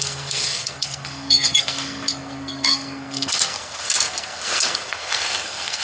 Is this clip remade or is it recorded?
remade